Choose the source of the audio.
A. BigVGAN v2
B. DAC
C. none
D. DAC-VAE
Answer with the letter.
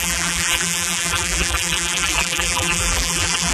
A